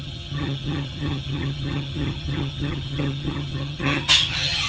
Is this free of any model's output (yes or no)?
no